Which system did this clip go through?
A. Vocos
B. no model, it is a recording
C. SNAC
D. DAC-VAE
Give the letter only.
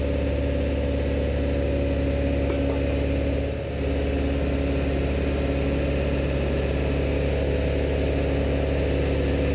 B